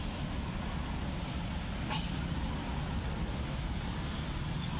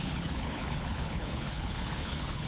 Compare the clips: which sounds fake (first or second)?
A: second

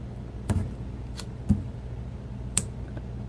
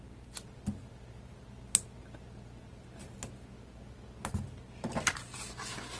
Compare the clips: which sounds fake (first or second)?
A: first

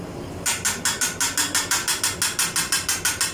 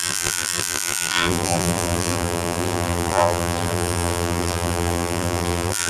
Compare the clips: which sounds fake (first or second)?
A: second